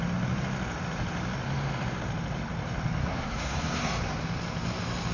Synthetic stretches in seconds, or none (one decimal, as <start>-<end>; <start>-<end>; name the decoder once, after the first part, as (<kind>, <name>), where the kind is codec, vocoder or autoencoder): 3.0-3.8 (codec, SNAC)